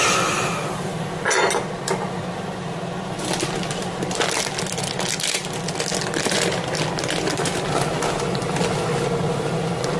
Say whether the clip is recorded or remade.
recorded